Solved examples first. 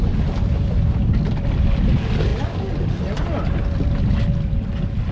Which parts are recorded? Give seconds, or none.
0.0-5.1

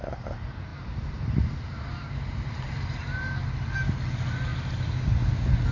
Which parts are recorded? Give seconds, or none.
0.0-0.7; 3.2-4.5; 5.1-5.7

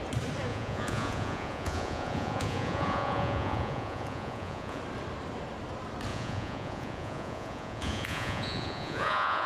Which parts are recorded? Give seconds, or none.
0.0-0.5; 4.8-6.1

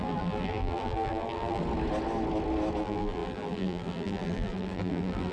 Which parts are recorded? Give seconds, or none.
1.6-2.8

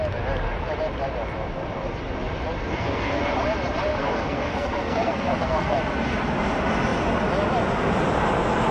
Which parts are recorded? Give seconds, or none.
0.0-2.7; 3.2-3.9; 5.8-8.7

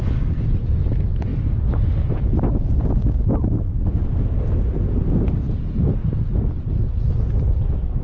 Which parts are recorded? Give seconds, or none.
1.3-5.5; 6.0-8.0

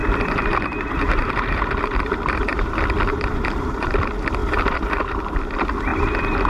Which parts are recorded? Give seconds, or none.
3.9-4.4; 5.4-6.5